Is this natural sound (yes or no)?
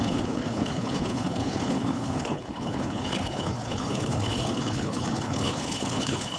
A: no